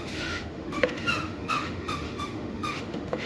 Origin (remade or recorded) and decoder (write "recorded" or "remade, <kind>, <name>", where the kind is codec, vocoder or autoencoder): remade, autoencoder, DAC-VAE